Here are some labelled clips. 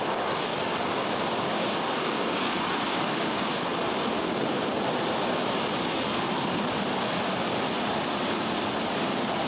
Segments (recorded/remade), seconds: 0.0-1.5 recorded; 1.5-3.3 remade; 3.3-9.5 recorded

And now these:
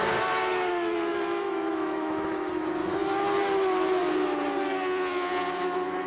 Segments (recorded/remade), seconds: 0.0-1.1 recorded; 1.1-2.5 remade; 2.5-6.1 recorded

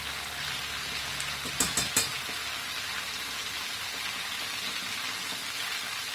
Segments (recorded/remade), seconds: 0.0-6.1 recorded

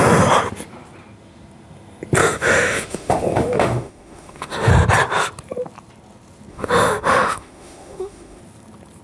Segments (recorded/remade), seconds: 0.0-2.2 recorded; 2.2-4.7 remade; 4.7-6.5 recorded; 6.5-8.4 remade; 8.4-9.0 recorded